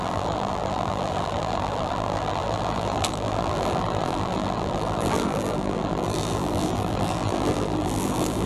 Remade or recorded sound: remade